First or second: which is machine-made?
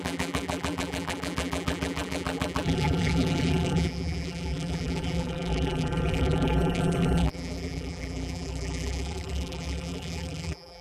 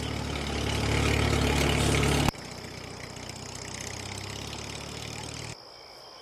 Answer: first